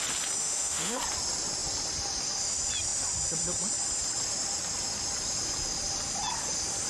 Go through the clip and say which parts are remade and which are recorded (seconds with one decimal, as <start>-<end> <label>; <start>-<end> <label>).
0.0-0.4 recorded; 0.4-1.0 remade; 1.0-6.9 recorded